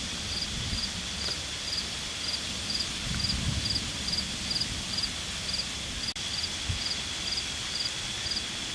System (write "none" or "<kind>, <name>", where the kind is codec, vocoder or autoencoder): none